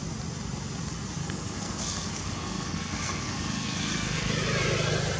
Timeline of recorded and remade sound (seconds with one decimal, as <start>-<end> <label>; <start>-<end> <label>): 0.0-1.2 recorded; 1.2-4.3 remade; 4.3-5.2 recorded

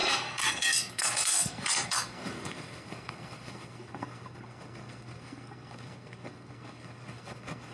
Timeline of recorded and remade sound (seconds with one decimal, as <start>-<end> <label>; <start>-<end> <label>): 0.0-7.7 remade

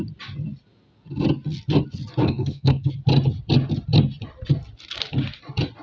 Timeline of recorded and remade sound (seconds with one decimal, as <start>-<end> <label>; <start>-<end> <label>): 0.0-2.2 recorded; 2.2-2.9 remade; 2.9-5.8 recorded